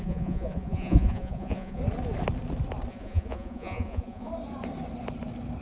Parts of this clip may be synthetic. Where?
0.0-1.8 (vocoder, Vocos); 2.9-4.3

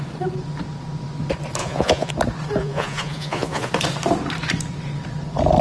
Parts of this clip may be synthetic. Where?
1.6-2.1 (vocoder, Vocos); 2.6-3.7

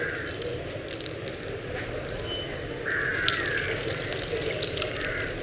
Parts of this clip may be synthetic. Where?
none

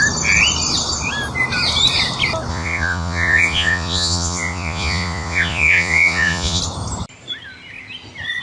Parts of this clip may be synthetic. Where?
2.5-6.6 (vocoder, Vocos)